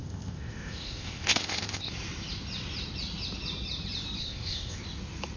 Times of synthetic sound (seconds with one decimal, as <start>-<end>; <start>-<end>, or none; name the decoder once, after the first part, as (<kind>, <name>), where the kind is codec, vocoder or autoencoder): 0.0-1.9 (codec, ZipCodec); 4.2-4.8